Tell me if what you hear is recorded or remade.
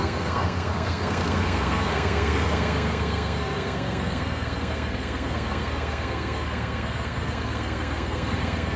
remade